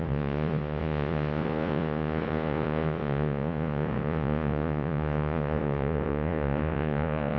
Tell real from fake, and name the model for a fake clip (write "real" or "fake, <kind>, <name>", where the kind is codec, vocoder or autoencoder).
fake, vocoder, Vocos